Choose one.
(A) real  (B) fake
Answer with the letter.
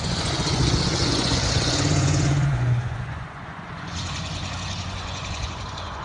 B